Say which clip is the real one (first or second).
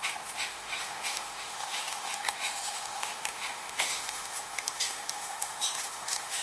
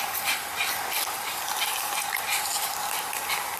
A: second